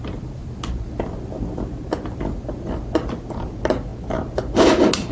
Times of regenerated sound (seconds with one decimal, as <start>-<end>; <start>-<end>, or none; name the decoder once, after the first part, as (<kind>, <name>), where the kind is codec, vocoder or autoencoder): none